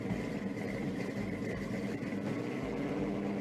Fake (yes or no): no